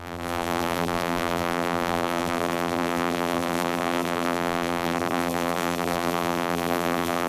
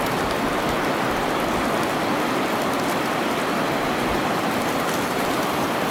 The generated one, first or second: first